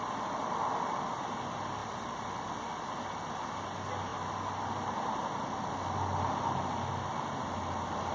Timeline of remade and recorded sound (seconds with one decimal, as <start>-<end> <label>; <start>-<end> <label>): 0.0-8.1 recorded